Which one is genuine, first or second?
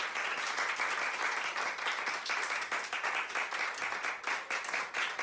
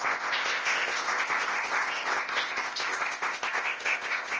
first